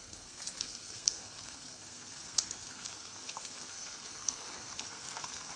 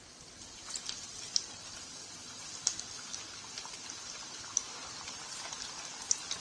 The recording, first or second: second